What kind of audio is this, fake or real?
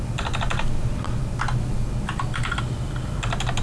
real